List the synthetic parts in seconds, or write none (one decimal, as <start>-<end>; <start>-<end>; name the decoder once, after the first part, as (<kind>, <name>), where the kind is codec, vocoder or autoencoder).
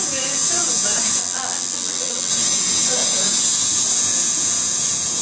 0.0-1.2 (vocoder, Vocos); 2.3-5.2